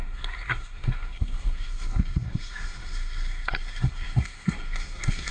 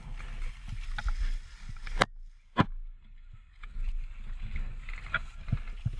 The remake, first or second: first